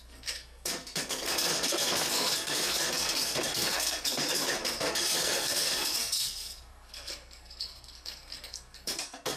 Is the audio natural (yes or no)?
no